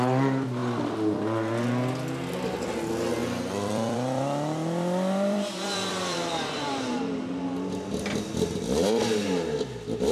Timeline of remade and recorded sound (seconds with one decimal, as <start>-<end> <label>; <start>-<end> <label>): 0.0-3.2 recorded; 3.2-6.8 remade; 6.8-10.1 recorded